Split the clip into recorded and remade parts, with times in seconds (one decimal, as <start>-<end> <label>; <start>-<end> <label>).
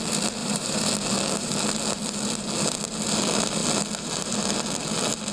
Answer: 0.0-0.4 recorded; 0.4-0.9 remade; 0.9-5.3 recorded